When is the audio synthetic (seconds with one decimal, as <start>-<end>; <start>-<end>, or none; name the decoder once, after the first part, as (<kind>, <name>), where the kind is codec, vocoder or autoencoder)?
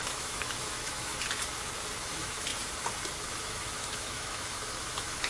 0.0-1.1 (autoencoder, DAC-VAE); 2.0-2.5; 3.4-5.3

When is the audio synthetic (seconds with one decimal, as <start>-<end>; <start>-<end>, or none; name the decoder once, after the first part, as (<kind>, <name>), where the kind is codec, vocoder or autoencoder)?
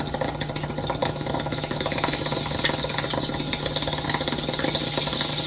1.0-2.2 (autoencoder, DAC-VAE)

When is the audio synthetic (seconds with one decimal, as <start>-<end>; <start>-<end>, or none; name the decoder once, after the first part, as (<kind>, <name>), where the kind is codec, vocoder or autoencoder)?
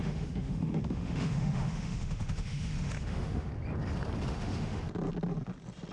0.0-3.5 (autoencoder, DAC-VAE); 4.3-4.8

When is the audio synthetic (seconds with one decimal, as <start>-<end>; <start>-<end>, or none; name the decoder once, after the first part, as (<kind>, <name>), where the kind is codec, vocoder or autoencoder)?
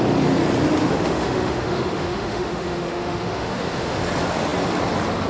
0.8-4.0 (autoencoder, DAC-VAE)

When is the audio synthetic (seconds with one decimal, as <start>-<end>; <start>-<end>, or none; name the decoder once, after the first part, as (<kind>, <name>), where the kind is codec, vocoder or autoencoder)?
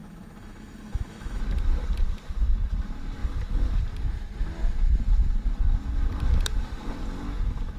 0.0-1.4 (autoencoder, DAC-VAE)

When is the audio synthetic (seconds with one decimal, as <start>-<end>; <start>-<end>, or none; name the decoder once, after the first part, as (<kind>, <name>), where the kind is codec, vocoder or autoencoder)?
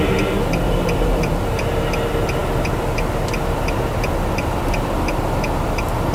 none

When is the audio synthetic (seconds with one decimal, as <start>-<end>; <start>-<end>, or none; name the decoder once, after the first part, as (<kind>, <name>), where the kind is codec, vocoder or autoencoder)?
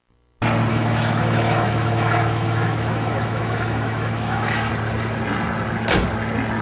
0.7-4.7 (autoencoder, DAC-VAE)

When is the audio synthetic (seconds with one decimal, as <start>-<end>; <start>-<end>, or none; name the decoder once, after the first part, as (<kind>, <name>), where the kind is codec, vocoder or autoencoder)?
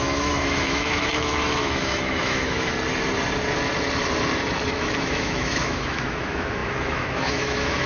0.0-2.7 (autoencoder, DAC-VAE); 4.7-7.9